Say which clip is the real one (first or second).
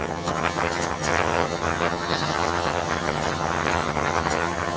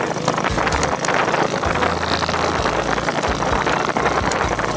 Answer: second